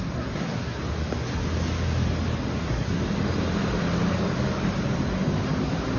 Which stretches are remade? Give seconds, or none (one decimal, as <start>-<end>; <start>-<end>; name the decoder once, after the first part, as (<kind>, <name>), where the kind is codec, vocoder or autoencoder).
0.0-0.8 (codec, SNAC); 2.6-3.0